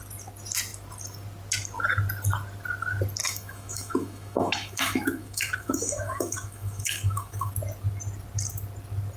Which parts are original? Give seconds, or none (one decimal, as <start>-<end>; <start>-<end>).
0.0-3.2; 7.5-9.2